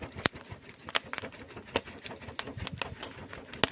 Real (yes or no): yes